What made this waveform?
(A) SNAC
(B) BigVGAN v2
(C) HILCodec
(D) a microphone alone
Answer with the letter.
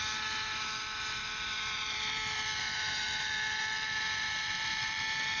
B